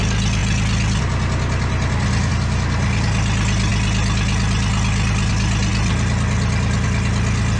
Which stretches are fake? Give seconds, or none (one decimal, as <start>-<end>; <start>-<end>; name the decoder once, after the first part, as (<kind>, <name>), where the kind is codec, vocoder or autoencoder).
none